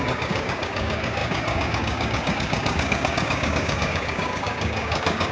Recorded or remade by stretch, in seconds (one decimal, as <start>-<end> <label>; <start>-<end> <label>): 0.0-5.3 remade